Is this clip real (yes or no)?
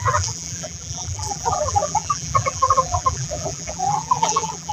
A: no